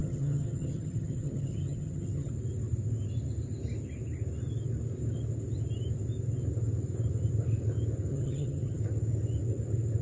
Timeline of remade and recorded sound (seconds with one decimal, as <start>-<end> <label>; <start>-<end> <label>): 0.0-2.3 remade; 2.3-8.1 recorded; 8.1-8.8 remade; 8.8-10.0 recorded

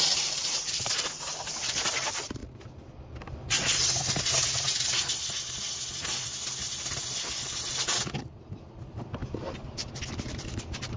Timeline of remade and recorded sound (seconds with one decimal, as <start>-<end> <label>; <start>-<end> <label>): 0.0-2.4 remade; 2.4-7.6 recorded; 7.6-9.2 remade; 9.2-11.0 recorded

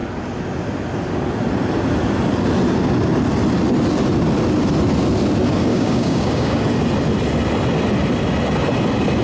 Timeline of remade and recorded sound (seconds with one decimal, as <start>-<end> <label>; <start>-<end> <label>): 0.0-5.7 recorded; 5.7-6.6 remade; 6.6-9.2 recorded

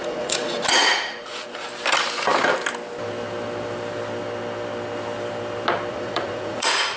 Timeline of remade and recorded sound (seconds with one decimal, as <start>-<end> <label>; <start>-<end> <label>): 0.0-1.7 remade; 1.7-5.9 recorded; 5.9-7.0 remade

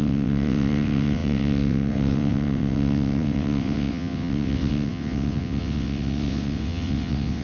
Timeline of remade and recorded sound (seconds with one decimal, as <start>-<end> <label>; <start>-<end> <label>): 0.0-7.4 remade

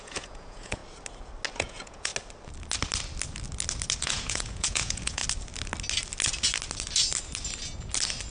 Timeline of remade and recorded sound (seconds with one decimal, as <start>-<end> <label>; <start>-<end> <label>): 0.0-0.8 remade; 0.8-1.6 recorded; 1.6-2.1 remade; 2.1-4.0 recorded; 4.0-5.2 remade; 5.2-8.3 recorded